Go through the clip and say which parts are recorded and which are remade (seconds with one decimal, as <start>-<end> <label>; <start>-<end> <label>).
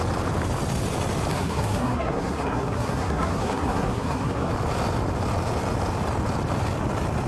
0.0-1.3 recorded; 1.3-4.5 remade; 4.5-7.3 recorded